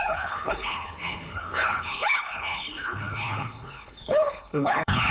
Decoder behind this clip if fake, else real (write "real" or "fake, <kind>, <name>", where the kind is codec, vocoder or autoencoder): fake, codec, HILCodec